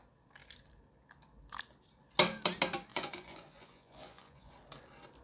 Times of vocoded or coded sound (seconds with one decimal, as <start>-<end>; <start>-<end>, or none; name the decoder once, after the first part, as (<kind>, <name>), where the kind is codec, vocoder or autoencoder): 2.9-4.5 (vocoder, Vocos)